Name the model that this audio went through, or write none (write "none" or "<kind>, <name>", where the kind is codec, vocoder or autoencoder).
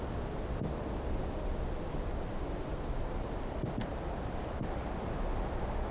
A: none